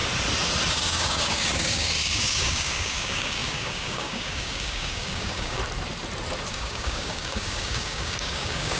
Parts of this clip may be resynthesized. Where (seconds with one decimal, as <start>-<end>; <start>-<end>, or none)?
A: 0.7-5.6; 6.5-8.8

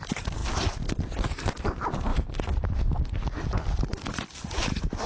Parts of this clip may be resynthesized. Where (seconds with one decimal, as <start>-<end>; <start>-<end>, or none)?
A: none

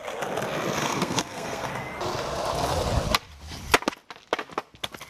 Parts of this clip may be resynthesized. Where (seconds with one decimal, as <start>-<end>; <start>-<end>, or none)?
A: 0.8-1.7

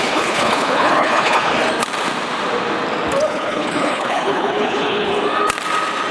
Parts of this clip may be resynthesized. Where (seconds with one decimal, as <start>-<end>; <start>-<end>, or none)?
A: 0.0-1.5; 3.3-5.1

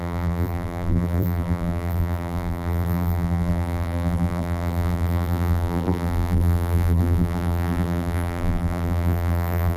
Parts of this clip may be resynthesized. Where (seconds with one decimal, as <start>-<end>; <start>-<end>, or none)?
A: 0.0-9.8

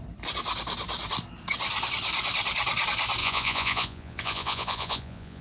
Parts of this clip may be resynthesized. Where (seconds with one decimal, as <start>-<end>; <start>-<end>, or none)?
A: 3.2-5.4

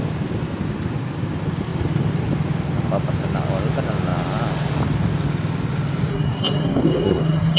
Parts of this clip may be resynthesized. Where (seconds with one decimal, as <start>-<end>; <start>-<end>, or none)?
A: 6.1-7.6

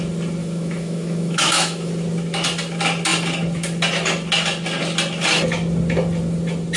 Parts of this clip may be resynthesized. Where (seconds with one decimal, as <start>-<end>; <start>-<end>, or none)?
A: 0.4-1.9